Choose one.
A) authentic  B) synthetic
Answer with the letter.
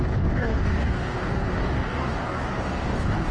B